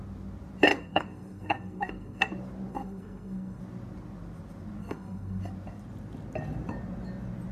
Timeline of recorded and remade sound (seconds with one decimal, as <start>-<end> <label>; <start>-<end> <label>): 0.0-0.7 recorded; 0.7-2.3 remade; 2.3-2.7 recorded; 2.7-3.6 remade; 3.6-4.8 recorded; 4.8-5.4 remade; 5.4-7.5 recorded

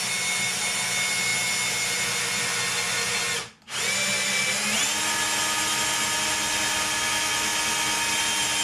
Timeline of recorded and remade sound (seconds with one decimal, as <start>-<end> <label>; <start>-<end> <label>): 0.0-8.6 recorded

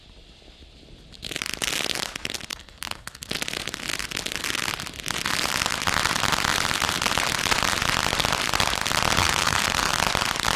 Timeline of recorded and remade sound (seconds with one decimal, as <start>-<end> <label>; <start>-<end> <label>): 0.0-2.5 recorded; 2.5-3.3 remade; 3.3-9.2 recorded; 9.2-9.9 remade; 9.9-10.6 recorded

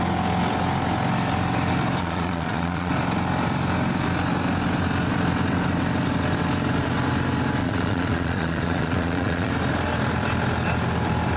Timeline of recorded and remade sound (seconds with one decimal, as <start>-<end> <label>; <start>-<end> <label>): 0.0-2.0 recorded; 2.0-2.9 remade; 2.9-7.6 recorded; 7.6-9.5 remade; 9.5-11.4 recorded

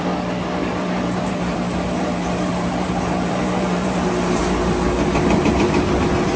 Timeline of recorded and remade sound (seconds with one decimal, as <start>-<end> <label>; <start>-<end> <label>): 0.0-0.6 recorded; 0.6-4.4 remade; 4.4-6.4 recorded

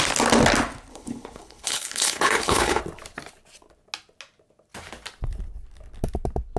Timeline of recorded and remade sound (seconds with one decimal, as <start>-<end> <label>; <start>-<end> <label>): 0.0-0.9 recorded; 0.9-2.8 remade; 2.8-6.6 recorded

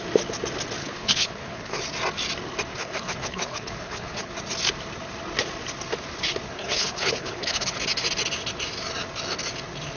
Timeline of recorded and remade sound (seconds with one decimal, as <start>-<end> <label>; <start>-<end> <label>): 0.0-0.8 recorded; 0.8-1.8 remade; 1.8-2.7 recorded; 2.7-4.3 remade; 4.3-6.5 recorded; 6.5-7.7 remade; 7.7-10.0 recorded

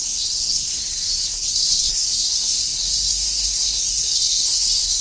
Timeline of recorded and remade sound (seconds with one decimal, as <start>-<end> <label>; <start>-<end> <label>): 0.0-0.8 remade; 0.8-1.5 recorded; 1.5-5.0 remade